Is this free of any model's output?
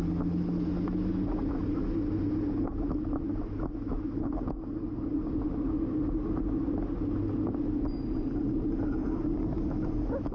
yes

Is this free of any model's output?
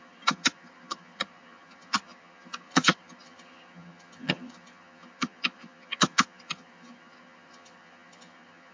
no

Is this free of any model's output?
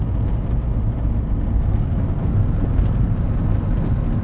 yes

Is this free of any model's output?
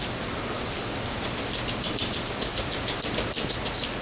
yes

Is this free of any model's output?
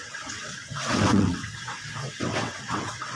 no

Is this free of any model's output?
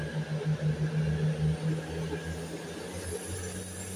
yes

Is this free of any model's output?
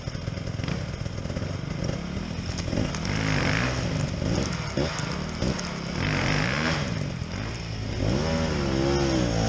yes